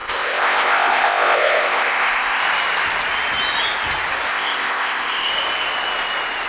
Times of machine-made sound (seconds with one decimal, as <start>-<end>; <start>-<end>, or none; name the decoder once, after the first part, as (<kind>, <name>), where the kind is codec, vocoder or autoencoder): 0.0-2.4 (codec, ZipCodec); 4.3-5.3